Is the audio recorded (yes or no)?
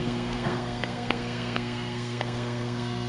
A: no